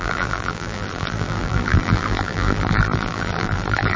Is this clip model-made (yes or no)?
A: yes